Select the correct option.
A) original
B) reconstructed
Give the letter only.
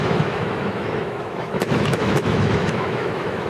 B